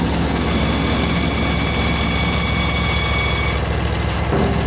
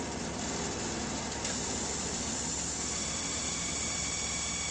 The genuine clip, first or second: first